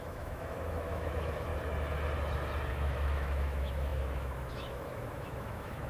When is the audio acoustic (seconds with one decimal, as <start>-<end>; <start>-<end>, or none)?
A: 1.5-2.7